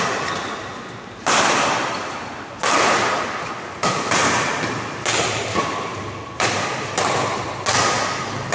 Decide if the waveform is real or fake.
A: real